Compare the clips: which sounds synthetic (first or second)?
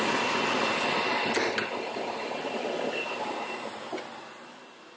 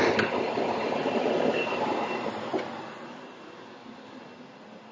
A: second